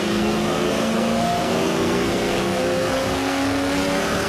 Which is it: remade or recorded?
remade